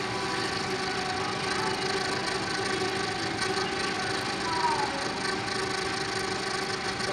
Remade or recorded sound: recorded